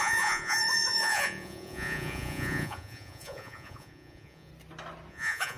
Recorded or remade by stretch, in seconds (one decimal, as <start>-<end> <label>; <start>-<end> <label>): 0.0-4.5 remade; 4.5-5.1 recorded; 5.1-5.6 remade